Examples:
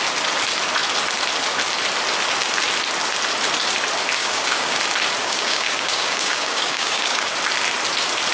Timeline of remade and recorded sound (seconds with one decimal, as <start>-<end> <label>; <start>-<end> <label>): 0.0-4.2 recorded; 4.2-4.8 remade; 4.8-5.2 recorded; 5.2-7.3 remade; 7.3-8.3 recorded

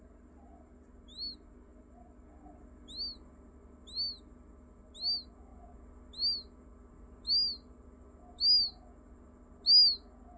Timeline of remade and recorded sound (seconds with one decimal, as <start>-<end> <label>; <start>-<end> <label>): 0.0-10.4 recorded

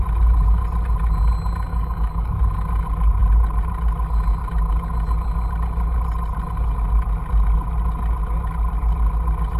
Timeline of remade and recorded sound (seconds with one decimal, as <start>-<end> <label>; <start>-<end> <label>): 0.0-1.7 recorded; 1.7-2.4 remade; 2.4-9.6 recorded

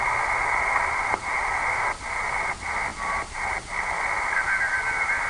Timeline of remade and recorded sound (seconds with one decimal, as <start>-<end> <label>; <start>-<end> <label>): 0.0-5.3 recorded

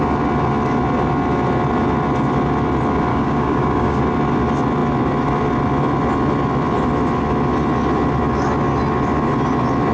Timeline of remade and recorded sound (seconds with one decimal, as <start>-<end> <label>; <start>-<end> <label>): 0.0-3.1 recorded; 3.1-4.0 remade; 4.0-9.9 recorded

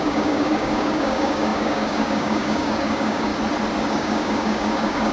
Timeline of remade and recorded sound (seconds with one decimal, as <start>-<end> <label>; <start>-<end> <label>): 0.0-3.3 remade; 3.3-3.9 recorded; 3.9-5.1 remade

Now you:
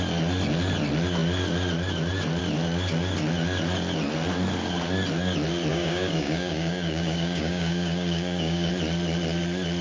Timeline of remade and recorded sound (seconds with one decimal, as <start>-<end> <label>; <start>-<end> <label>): 0.0-5.7 recorded; 5.7-8.7 remade; 8.7-9.8 recorded

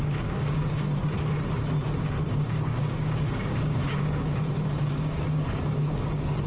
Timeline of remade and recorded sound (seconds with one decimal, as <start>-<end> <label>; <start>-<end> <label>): 0.0-0.9 remade; 0.9-2.3 recorded; 2.3-6.5 remade